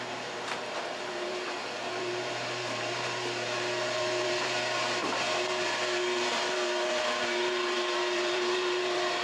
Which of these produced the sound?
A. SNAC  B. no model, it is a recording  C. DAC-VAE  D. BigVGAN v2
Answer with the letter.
D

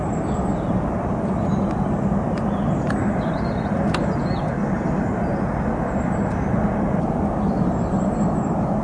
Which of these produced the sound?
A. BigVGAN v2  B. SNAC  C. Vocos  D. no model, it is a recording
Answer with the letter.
D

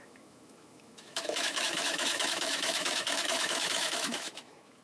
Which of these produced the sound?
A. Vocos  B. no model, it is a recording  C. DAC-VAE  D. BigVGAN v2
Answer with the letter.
C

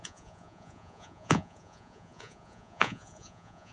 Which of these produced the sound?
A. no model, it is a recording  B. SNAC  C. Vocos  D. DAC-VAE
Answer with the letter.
C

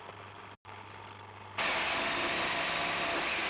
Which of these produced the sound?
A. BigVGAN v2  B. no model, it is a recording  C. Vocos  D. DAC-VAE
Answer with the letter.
B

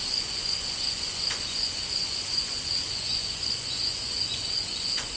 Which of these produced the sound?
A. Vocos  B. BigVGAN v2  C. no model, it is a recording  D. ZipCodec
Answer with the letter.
A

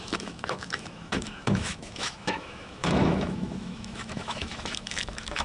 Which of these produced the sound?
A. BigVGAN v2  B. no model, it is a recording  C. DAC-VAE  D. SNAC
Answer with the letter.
C